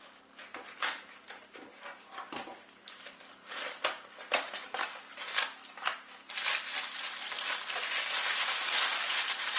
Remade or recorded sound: recorded